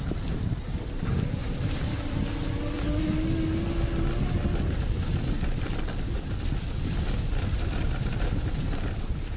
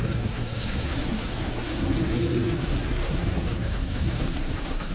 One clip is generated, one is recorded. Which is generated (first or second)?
second